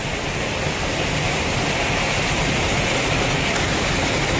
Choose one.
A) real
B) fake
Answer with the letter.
A